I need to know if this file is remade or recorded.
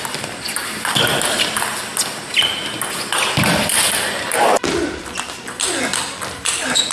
recorded